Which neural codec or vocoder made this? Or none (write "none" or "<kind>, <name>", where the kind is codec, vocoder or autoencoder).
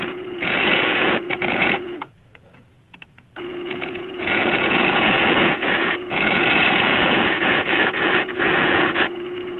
vocoder, Vocos